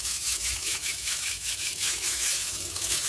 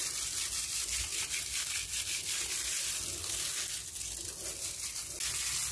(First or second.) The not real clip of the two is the first